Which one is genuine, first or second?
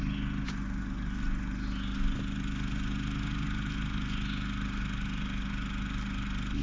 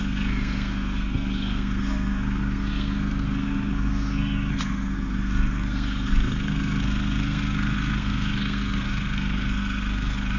first